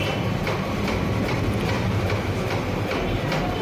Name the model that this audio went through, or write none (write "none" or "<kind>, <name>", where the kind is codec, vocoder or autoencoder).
none